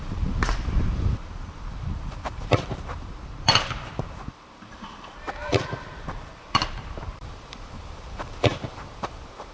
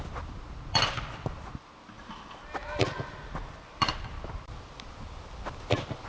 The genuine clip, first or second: second